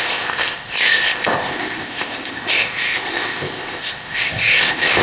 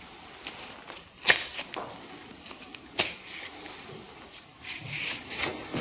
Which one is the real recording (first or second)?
second